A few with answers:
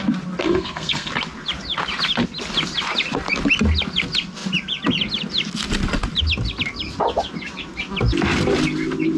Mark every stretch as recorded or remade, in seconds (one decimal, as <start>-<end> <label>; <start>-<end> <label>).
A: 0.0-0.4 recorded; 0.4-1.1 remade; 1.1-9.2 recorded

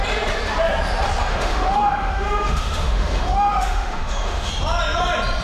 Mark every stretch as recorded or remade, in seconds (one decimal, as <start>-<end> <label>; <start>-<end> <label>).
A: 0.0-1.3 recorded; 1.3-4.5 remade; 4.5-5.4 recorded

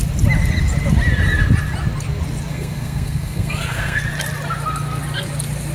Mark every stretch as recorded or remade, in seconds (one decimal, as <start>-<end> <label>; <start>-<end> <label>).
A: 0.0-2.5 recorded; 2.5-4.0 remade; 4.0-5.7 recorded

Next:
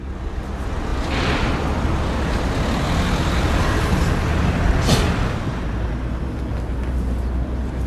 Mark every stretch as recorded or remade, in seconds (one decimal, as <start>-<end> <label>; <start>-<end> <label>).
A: 0.0-7.9 recorded

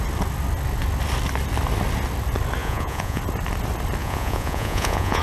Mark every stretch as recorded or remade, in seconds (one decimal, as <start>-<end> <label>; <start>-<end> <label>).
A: 0.0-2.6 recorded; 2.6-3.2 remade; 3.2-4.0 recorded; 4.0-5.2 remade

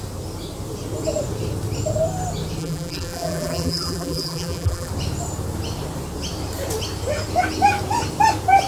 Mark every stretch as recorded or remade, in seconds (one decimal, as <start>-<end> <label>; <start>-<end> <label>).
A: 0.0-2.6 recorded; 2.6-4.9 remade; 4.9-8.7 recorded

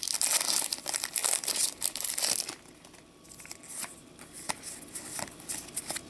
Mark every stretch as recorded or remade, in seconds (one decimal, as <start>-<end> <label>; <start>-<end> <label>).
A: 0.0-6.1 recorded